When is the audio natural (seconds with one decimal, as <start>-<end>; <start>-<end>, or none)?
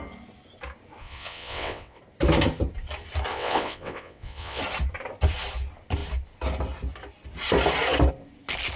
0.0-1.0; 2.0-3.3; 4.6-8.8